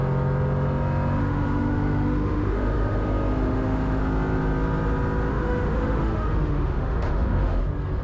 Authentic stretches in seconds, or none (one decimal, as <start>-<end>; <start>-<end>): 0.0-1.2; 4.0-5.3; 7.6-8.0